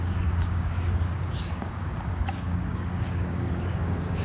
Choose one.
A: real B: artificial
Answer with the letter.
B